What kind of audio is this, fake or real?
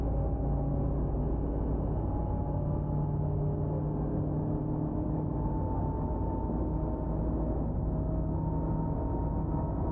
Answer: real